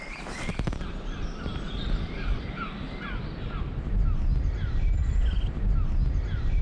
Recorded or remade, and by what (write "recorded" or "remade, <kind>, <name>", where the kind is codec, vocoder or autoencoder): recorded